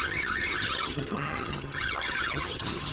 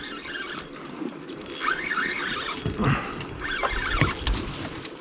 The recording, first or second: second